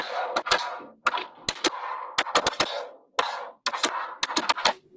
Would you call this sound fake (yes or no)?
no